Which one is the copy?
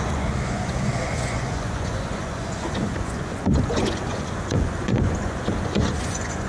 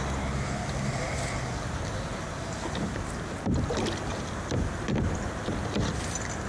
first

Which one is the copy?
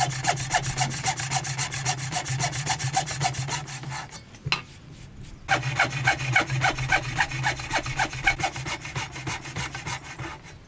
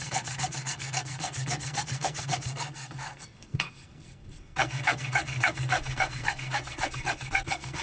second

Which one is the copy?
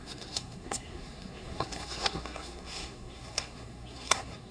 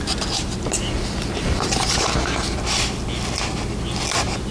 first